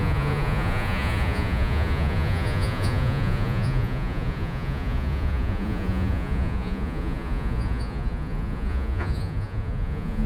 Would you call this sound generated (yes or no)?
yes